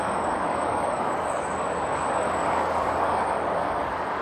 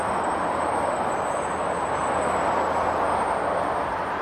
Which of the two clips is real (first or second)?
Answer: second